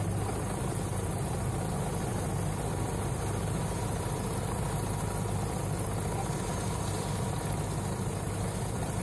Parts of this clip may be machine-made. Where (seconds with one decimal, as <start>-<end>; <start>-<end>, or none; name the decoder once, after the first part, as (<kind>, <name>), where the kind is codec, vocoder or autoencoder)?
none